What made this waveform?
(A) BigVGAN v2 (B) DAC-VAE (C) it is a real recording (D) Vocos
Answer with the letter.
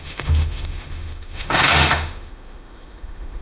B